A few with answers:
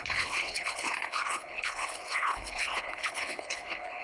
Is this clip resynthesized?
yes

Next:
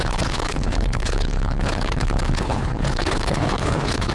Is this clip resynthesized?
yes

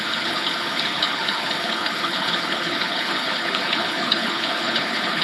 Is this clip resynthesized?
yes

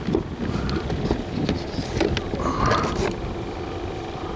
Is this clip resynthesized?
no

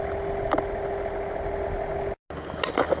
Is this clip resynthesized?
no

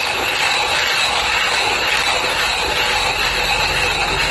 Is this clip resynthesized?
no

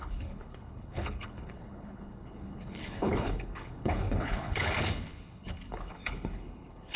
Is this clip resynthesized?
yes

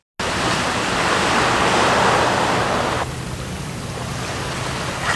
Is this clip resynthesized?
no